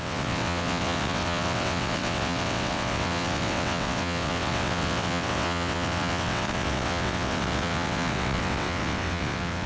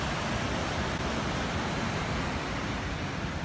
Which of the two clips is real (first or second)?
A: second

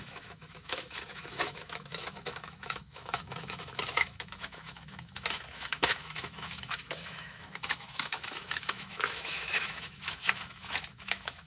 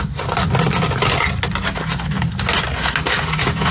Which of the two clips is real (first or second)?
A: second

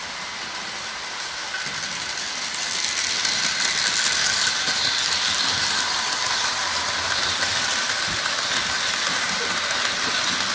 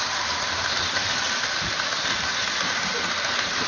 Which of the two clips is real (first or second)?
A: first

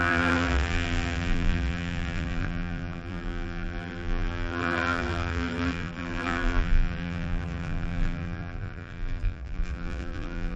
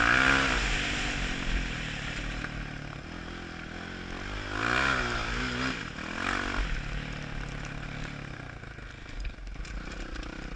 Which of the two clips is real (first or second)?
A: second